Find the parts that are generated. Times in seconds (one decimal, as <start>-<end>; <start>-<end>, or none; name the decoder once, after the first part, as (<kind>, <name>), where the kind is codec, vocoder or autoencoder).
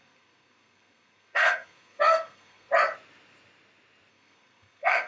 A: 0.0-2.7 (codec, SNAC); 4.1-5.1